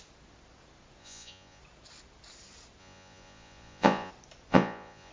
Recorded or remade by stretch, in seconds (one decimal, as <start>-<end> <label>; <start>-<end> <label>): 0.0-1.0 recorded; 1.0-1.6 remade; 1.6-2.8 recorded; 2.8-4.1 remade; 4.1-4.5 recorded; 4.5-5.1 remade